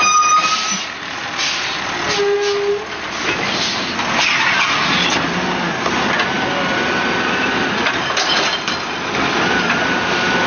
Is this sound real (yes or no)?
yes